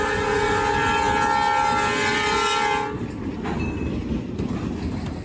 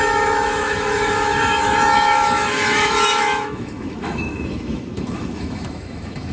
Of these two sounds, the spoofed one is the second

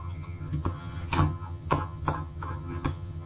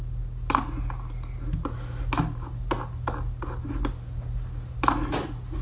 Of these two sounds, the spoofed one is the first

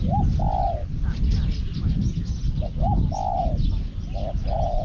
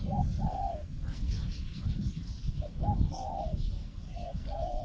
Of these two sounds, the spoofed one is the second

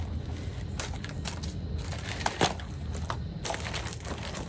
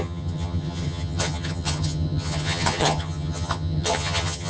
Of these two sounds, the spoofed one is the second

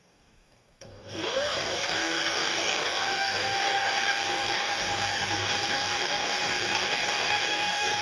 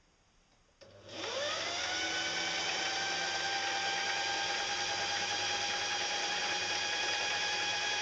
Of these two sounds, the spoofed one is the first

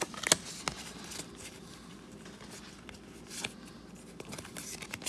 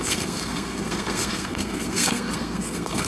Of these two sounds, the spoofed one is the second